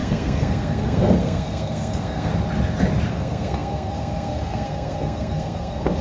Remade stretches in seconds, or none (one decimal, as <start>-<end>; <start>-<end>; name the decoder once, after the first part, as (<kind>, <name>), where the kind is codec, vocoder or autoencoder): 0.0-2.3 (codec, SNAC); 3.1-6.0